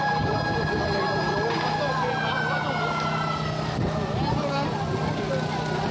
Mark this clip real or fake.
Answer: real